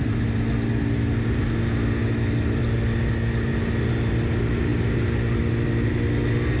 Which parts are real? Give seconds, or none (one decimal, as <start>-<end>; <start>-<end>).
0.0-6.6